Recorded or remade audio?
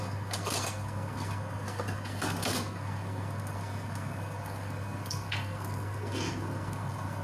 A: remade